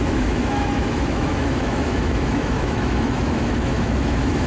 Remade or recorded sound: remade